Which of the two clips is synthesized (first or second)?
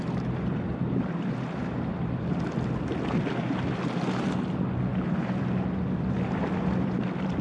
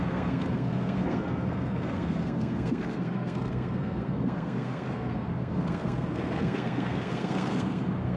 second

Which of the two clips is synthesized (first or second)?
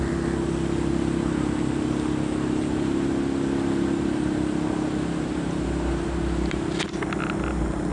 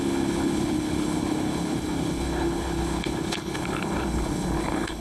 second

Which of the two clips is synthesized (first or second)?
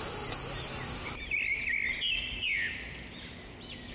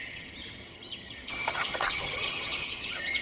second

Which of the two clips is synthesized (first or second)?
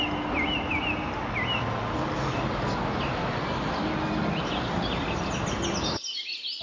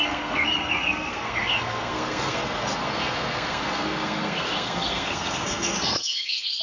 second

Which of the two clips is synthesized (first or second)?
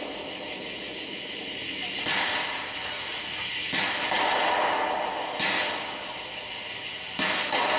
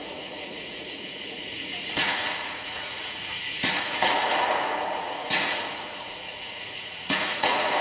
second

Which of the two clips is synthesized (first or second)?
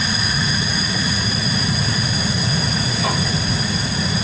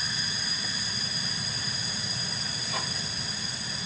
first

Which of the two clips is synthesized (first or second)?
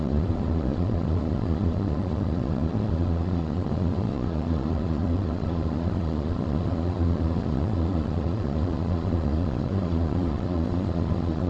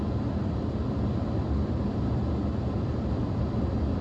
first